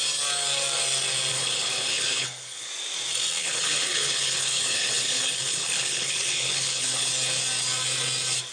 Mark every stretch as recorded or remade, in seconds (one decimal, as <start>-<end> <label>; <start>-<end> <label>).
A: 0.0-1.3 recorded; 1.3-2.7 remade; 2.7-3.4 recorded; 3.4-7.1 remade; 7.1-8.5 recorded

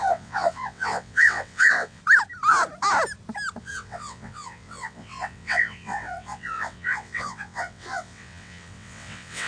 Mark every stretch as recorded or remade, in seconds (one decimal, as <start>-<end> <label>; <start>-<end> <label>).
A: 0.0-2.0 remade; 2.0-3.6 recorded; 3.6-9.5 remade

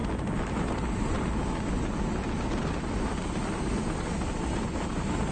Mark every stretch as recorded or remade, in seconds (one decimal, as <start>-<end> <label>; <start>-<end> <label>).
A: 0.0-5.3 recorded

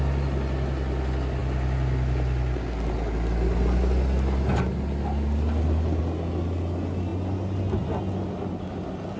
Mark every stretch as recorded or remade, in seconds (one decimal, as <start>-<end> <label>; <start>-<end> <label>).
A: 0.0-9.2 recorded

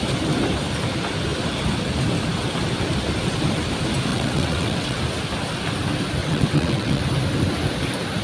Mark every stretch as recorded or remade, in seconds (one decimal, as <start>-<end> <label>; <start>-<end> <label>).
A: 0.0-4.1 recorded; 4.1-5.0 remade; 5.0-6.2 recorded; 6.2-7.0 remade; 7.0-8.2 recorded

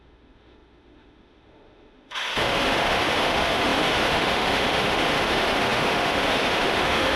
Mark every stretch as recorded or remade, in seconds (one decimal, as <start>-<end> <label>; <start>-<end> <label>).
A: 0.0-7.2 remade

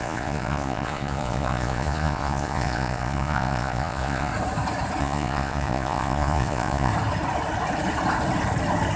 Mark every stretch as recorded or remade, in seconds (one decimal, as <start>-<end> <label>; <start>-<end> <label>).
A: 0.0-4.3 remade; 4.3-5.0 recorded; 5.0-6.9 remade; 6.9-9.0 recorded